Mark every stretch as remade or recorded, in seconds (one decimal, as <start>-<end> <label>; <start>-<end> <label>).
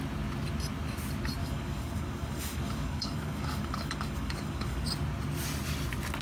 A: 0.0-1.4 recorded; 1.4-4.9 remade; 4.9-6.2 recorded